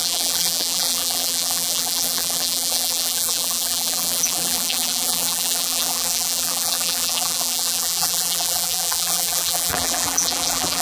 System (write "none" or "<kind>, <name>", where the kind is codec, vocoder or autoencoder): vocoder, BigVGAN v2